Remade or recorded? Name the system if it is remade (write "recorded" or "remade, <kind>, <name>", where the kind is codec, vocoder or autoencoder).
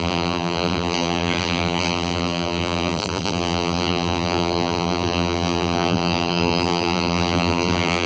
remade, vocoder, BigVGAN v2